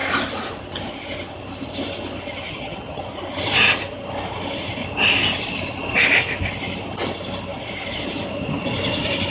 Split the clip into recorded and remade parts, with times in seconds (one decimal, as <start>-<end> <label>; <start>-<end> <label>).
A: 0.0-2.5 recorded; 2.5-3.0 remade; 3.0-9.3 recorded